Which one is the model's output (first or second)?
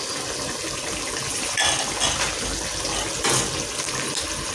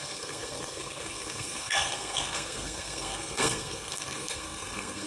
second